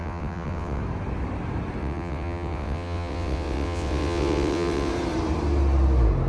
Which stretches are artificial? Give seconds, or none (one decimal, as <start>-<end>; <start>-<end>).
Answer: 0.0-0.8; 1.8-4.9